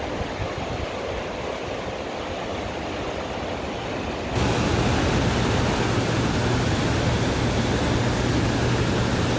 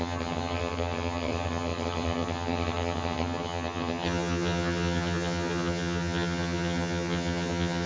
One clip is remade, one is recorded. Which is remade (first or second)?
second